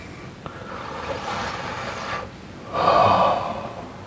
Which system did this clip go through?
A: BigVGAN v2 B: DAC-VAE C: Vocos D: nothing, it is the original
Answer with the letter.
D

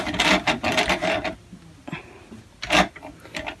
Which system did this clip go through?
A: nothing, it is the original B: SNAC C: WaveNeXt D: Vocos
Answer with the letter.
A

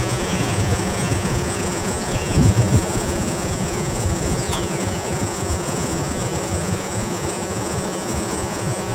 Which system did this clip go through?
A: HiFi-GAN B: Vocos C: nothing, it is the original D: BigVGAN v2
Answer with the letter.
B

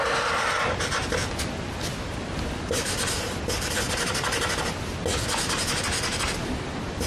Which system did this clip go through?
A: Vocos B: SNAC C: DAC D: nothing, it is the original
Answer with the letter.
D